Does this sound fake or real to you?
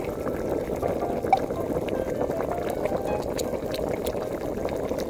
real